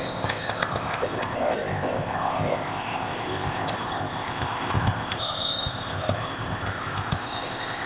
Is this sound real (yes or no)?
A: no